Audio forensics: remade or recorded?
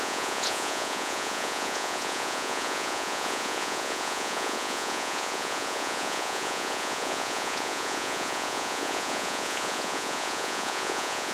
remade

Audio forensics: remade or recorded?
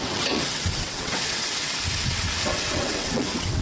remade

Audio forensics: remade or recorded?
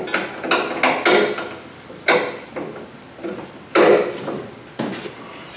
recorded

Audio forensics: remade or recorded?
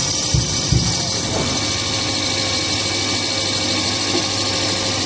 recorded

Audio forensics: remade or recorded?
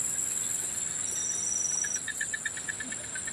recorded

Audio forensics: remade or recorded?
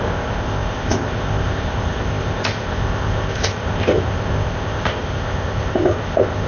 remade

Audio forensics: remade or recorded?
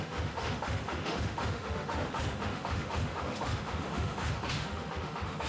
remade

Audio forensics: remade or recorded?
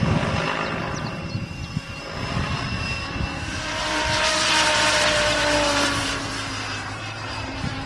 remade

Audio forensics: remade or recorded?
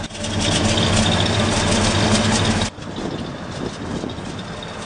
recorded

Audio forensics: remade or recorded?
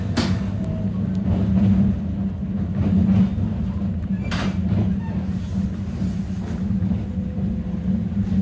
recorded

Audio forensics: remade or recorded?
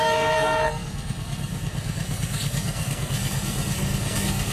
remade